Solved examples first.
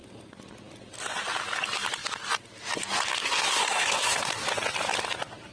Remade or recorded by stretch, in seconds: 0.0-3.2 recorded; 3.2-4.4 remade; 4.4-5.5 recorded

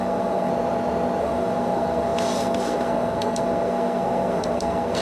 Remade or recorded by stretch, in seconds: 0.0-0.5 remade; 0.5-1.2 recorded; 1.2-5.0 remade